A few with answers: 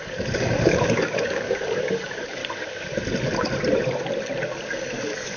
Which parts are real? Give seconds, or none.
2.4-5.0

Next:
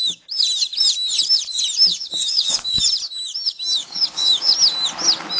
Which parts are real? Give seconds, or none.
0.0-1.9; 2.8-3.8; 4.5-5.4

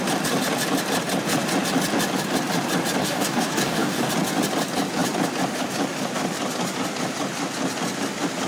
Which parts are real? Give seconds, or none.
0.0-3.0; 4.1-8.5